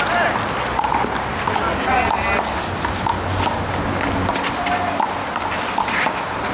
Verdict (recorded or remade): recorded